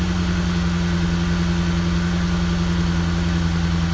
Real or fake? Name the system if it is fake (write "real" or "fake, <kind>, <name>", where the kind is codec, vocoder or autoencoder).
real